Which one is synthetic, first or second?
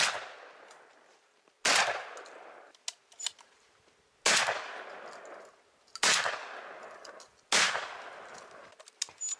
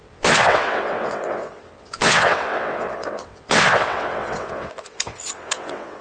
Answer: second